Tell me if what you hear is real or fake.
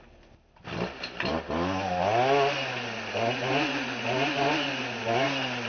real